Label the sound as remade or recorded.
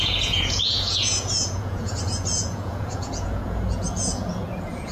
remade